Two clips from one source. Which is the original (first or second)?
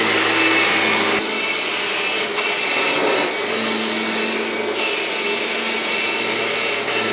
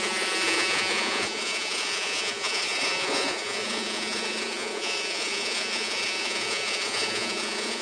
first